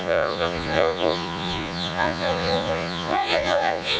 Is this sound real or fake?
fake